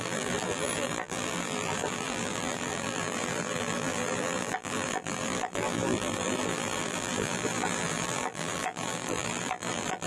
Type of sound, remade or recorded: remade